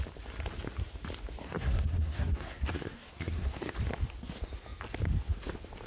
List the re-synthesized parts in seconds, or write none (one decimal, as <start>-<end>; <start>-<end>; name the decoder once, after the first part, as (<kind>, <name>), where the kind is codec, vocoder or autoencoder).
1.4-3.7 (codec, SNAC)